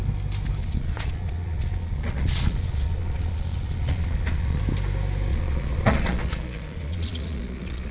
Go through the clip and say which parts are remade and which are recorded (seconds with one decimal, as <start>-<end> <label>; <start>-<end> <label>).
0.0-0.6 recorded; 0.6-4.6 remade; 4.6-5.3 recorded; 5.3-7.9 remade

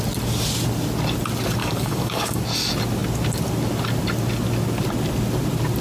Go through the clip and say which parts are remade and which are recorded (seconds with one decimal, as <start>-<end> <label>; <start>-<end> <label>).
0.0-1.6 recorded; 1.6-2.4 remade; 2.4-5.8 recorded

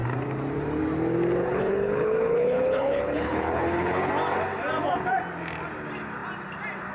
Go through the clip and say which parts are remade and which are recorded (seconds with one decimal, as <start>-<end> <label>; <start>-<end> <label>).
0.0-1.4 recorded; 1.4-4.1 remade; 4.1-6.9 recorded

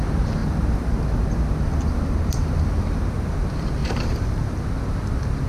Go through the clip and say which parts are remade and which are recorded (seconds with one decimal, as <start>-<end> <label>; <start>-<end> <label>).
0.0-0.4 recorded; 0.4-3.4 remade; 3.4-3.8 recorded; 3.8-4.6 remade; 4.6-5.5 recorded

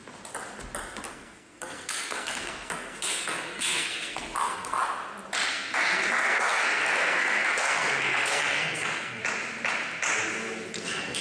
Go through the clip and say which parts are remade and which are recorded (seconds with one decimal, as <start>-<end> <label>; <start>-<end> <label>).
0.0-1.1 recorded; 1.1-4.8 remade; 4.8-5.5 recorded; 5.5-9.2 remade; 9.2-10.7 recorded; 10.7-11.2 remade